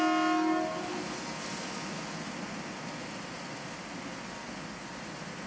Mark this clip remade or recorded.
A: recorded